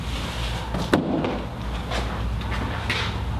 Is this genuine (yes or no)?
yes